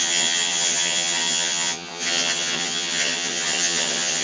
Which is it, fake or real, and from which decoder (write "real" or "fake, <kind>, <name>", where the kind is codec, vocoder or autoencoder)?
fake, vocoder, HiFi-GAN